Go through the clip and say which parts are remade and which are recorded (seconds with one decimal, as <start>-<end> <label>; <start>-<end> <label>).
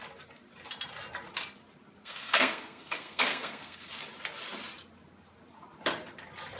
0.0-2.0 recorded; 2.0-3.9 remade; 3.9-6.6 recorded